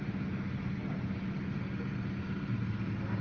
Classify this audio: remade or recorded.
recorded